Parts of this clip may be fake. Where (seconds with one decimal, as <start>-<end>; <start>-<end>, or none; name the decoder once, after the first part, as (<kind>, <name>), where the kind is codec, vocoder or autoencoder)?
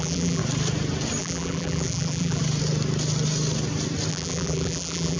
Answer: 0.0-0.4 (vocoder, BigVGAN v2); 1.2-2.4; 4.1-5.2